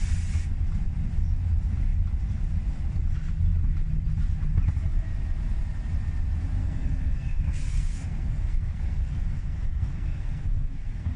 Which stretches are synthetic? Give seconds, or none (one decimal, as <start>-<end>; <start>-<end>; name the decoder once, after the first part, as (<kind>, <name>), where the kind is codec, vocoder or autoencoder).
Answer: 6.6-11.2 (codec, SNAC)